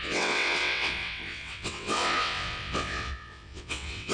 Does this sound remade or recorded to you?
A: remade